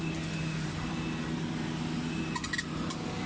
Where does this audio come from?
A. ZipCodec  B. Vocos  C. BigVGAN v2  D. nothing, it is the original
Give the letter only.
D